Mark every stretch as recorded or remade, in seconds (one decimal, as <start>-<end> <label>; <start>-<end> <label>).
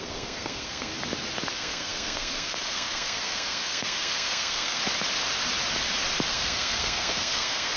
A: 0.0-0.9 remade; 0.9-1.5 recorded; 1.5-4.8 remade; 4.8-6.3 recorded; 6.3-7.8 remade